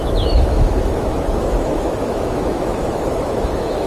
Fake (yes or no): yes